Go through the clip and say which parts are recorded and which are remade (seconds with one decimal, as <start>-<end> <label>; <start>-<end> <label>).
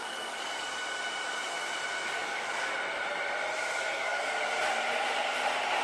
0.0-0.6 remade; 0.6-2.2 recorded; 2.2-2.7 remade; 2.7-3.8 recorded; 3.8-4.4 remade; 4.4-5.8 recorded